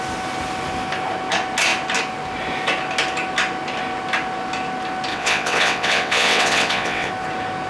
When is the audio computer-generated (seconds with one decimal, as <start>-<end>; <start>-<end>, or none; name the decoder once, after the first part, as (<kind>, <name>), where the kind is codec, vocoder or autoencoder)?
5.1-7.1 (vocoder, WaveNeXt)